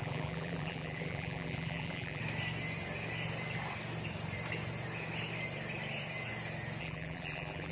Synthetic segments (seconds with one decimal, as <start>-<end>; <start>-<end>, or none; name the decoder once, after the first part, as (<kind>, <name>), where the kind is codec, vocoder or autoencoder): 0.0-2.2 (vocoder, BigVGAN v2); 6.8-7.7